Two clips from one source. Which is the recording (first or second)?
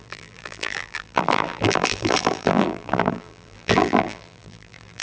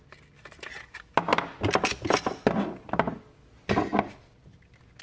second